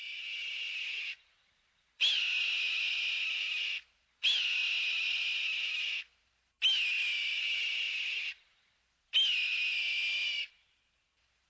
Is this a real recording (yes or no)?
yes